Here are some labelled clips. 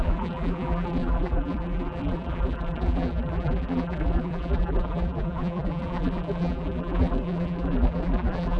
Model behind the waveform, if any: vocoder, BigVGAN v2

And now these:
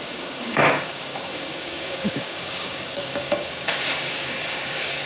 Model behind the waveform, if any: codec, DAC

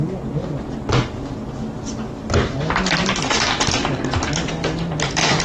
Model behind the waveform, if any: none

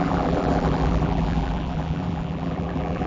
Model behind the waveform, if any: vocoder, BigVGAN v2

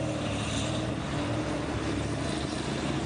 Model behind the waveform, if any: vocoder, BigVGAN v2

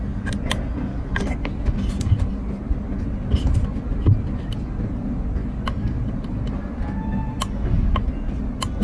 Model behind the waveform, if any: none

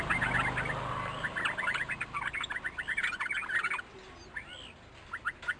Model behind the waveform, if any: none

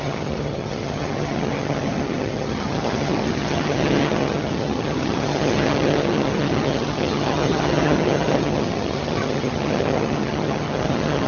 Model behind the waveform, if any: vocoder, HiFi-GAN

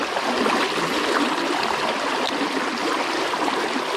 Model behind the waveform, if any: none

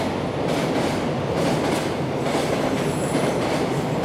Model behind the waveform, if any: none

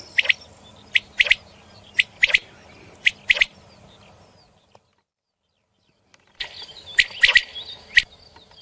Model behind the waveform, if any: none